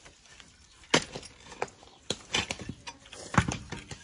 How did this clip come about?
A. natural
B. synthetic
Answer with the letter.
A